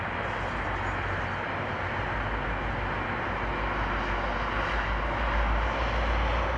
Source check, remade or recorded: recorded